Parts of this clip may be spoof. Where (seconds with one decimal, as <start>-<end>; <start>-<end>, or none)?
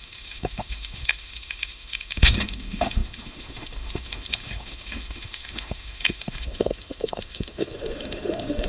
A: 0.0-8.7